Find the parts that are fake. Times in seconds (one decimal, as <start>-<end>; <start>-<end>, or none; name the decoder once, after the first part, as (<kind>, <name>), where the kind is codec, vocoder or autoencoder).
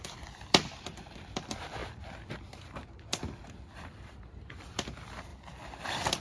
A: 0.0-1.8 (vocoder, BigVGAN v2); 3.0-6.2